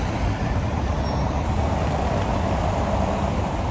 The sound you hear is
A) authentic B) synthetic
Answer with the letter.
A